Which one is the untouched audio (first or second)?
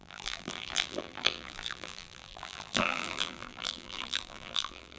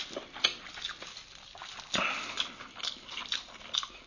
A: second